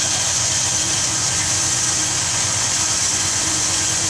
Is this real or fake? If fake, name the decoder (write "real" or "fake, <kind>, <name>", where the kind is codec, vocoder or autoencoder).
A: fake, vocoder, Vocos